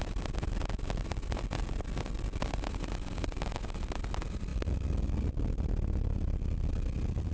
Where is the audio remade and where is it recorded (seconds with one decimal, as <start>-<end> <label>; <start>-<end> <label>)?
0.0-7.3 recorded